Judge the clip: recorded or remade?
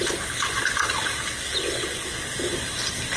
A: recorded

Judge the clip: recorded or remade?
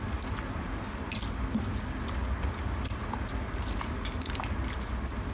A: recorded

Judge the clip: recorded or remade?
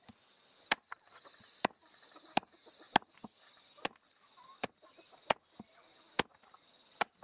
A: recorded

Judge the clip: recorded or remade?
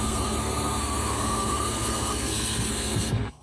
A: remade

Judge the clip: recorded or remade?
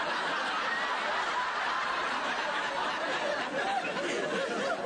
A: recorded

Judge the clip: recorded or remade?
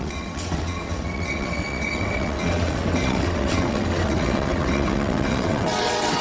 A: remade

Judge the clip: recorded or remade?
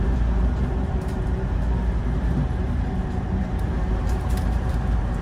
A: remade